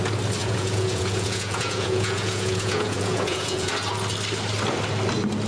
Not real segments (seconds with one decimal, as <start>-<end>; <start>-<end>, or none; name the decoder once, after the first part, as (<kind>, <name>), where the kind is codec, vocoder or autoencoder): 0.4-3.7 (vocoder, Vocos)